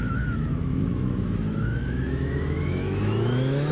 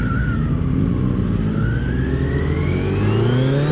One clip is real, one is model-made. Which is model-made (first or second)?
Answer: first